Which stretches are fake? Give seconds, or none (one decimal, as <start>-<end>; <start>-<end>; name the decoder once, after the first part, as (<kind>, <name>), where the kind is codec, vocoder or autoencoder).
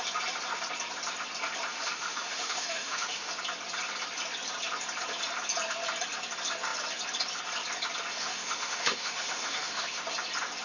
1.7-3.3 (autoencoder, DAC-VAE); 8.1-10.0